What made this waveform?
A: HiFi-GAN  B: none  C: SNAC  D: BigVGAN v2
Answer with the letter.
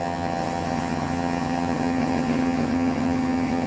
A